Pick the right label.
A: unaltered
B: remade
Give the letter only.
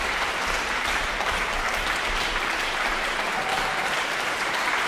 B